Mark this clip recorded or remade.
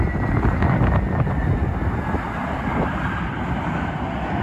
recorded